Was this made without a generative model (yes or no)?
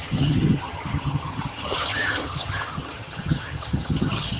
no